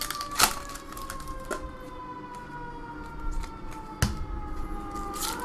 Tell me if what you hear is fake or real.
real